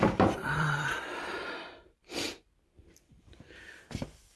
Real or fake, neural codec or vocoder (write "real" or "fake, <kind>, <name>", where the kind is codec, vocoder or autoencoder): fake, vocoder, BigVGAN v2